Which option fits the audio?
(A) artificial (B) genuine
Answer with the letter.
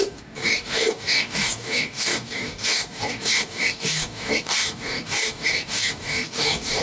A